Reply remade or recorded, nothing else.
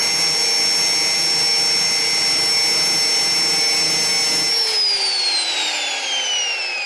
recorded